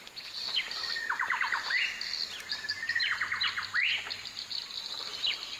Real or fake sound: real